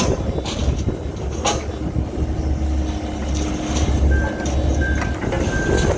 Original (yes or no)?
yes